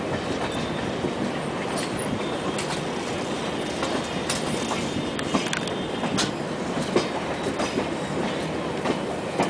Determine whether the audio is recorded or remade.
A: recorded